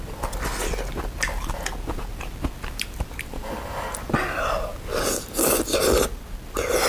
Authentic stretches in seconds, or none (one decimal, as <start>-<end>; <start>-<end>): 0.0-6.9